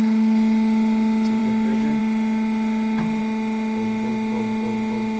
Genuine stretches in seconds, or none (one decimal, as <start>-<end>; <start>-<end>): 0.0-5.2

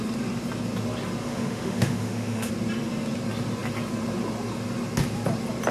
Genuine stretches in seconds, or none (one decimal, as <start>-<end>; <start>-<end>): 0.0-1.2; 2.5-5.7

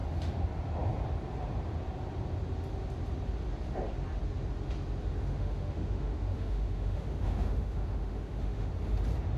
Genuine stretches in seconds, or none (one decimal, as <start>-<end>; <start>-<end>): 0.0-5.2; 8.7-9.4

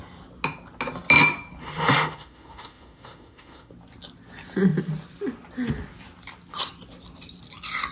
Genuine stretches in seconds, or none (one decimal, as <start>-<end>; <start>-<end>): 0.0-1.6; 3.7-7.9

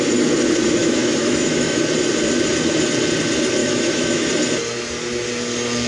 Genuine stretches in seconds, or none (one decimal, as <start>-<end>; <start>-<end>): 0.0-0.8; 1.8-3.6; 4.3-5.9